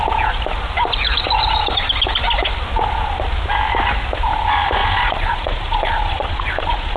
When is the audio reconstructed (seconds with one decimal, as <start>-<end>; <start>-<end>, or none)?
4.8-7.0